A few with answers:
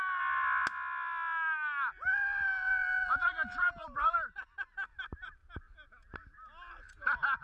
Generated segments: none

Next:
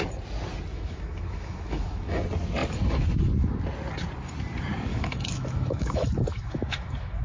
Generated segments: 0.7-2.2 (autoencoder, DAC-VAE); 4.9-7.2

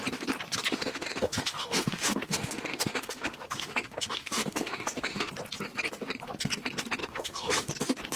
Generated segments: 0.7-5.3 (autoencoder, DAC-VAE); 7.0-7.7

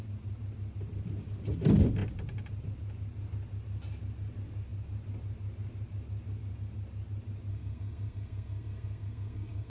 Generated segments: 7.5-9.7 (codec, SNAC)

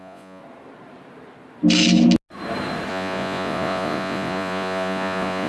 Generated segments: 0.0-0.4 (vocoder, Vocos); 2.9-5.5

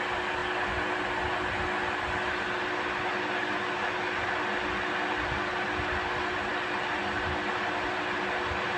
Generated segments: none

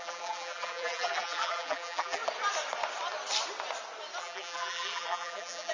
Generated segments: 0.0-2.2 (vocoder, BigVGAN v2); 4.2-5.7

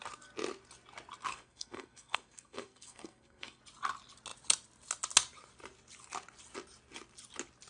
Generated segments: 1.3-3.6 (codec, SNAC)